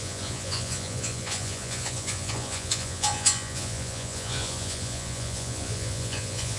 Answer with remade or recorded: remade